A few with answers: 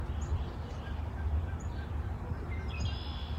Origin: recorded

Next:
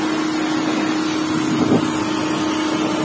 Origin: recorded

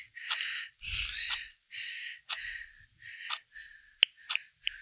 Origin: recorded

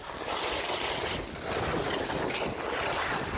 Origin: recorded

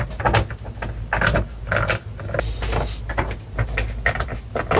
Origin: recorded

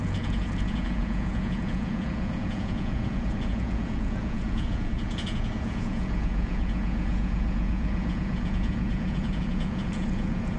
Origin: remade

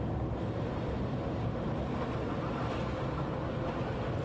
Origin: recorded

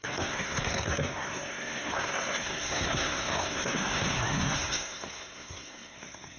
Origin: remade